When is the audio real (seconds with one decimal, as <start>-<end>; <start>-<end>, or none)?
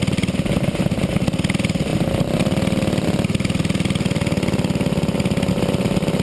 0.0-6.2